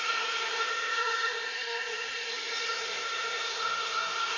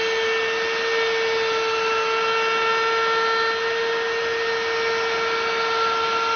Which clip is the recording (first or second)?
second